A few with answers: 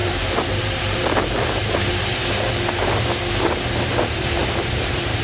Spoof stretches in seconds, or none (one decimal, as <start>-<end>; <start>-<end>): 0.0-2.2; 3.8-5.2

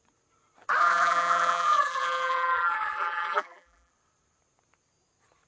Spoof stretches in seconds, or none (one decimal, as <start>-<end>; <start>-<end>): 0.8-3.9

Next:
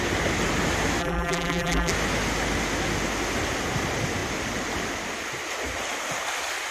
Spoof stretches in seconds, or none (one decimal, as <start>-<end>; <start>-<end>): 1.0-1.9